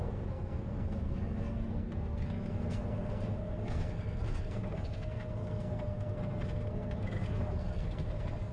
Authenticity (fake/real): fake